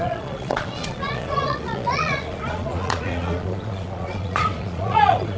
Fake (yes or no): yes